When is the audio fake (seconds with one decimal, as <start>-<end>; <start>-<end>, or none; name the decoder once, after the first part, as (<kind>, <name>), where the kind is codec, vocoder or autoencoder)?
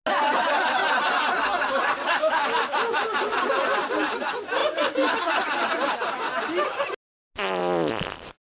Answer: none